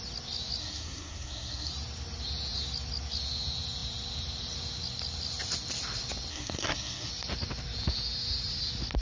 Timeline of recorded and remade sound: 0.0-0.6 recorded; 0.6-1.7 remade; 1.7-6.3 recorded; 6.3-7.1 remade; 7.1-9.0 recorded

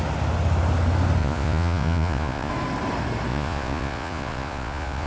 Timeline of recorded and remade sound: 0.0-1.2 recorded; 1.2-2.5 remade; 2.5-3.3 recorded; 3.3-5.1 remade

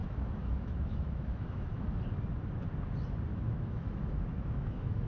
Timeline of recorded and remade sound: 0.0-2.0 remade; 2.0-3.3 recorded; 3.3-5.1 remade

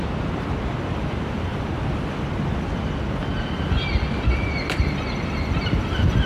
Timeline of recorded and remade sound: 0.0-6.3 recorded

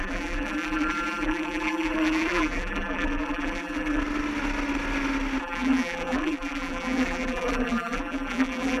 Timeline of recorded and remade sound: 0.0-4.0 remade; 4.0-5.4 recorded; 5.4-8.8 remade

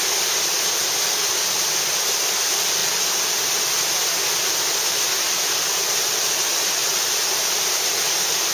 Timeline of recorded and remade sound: 0.0-8.5 recorded